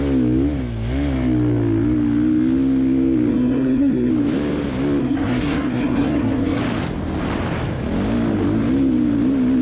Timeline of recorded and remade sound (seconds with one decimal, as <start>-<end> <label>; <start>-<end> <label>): 0.0-3.3 recorded; 3.3-4.1 remade; 4.1-5.0 recorded; 5.0-6.6 remade; 6.6-9.6 recorded